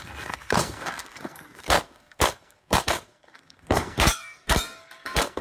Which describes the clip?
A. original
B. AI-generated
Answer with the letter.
B